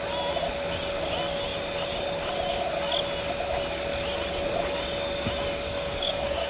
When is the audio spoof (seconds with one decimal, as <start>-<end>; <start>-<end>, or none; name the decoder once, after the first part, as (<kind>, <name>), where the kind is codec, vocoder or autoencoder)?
5.7-6.5 (codec, DAC)